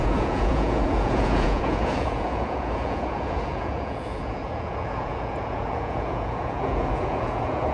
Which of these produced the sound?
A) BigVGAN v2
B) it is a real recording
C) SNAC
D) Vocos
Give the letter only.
D